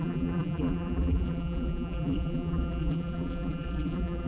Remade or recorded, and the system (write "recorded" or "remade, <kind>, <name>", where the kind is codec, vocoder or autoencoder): remade, vocoder, BigVGAN v2